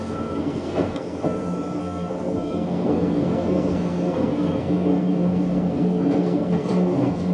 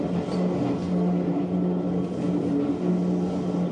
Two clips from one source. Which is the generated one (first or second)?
first